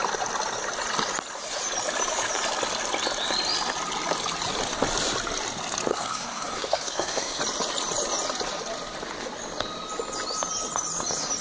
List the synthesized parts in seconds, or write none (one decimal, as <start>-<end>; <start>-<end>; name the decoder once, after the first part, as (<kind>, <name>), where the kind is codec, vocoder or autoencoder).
5.9-7.4 (codec, SNAC)